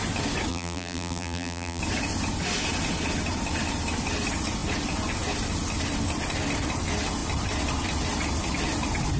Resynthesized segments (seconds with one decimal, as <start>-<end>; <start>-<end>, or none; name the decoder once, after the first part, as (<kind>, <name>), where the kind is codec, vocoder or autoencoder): 0.5-1.8 (vocoder, BigVGAN v2)